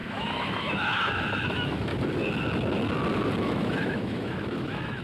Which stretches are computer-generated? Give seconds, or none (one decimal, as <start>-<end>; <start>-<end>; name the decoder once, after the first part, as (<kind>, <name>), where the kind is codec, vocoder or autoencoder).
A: 0.0-1.9 (autoencoder, DAC-VAE); 3.4-5.0

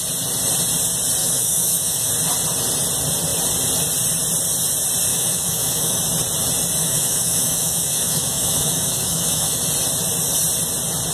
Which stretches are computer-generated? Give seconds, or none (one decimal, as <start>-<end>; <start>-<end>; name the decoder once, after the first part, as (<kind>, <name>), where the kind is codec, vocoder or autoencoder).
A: 1.2-2.1 (autoencoder, DAC-VAE); 5.1-6.0; 6.8-9.6